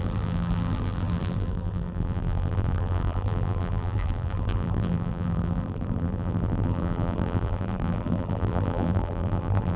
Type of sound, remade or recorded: remade